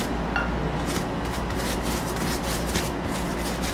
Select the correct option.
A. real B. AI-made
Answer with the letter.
A